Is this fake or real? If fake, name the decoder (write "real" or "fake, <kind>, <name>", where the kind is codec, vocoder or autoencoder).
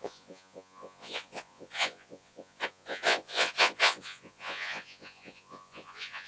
fake, vocoder, Vocos